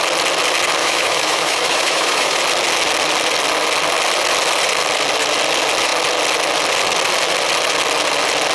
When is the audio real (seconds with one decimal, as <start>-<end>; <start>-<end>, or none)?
0.0-0.8; 2.4-8.5